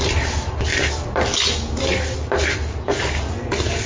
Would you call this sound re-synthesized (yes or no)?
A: no